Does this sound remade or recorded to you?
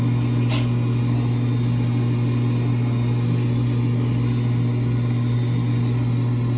recorded